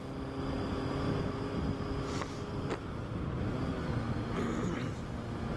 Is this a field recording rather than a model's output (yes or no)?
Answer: yes